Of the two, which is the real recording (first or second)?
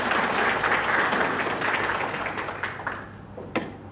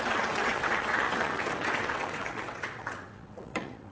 first